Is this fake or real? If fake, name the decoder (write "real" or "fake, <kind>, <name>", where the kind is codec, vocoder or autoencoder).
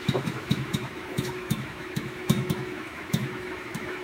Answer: fake, autoencoder, DAC-VAE